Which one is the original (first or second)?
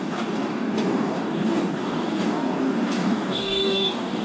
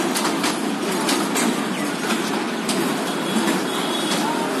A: second